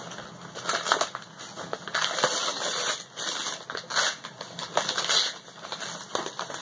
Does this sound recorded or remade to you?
recorded